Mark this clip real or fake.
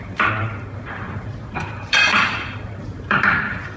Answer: fake